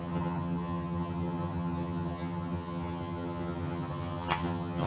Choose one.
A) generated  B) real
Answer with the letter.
A